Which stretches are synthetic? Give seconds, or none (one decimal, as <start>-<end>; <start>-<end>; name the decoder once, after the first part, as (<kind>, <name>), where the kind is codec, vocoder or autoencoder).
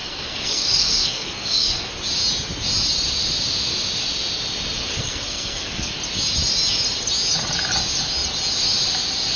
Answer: 0.0-1.9 (codec, SNAC); 4.9-5.9